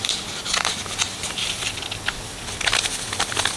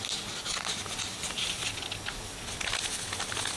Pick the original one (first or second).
second